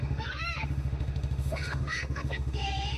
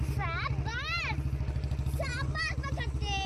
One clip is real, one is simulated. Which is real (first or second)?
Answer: second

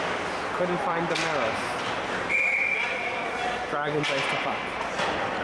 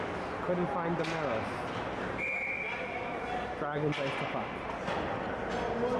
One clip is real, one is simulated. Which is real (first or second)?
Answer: second